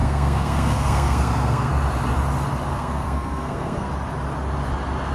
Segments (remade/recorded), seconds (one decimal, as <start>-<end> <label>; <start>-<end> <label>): 0.0-1.7 remade; 1.7-2.7 recorded; 2.7-3.9 remade; 3.9-5.1 recorded